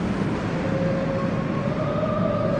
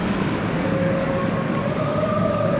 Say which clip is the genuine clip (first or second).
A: first